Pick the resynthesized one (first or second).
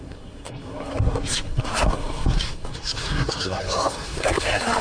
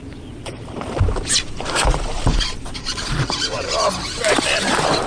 first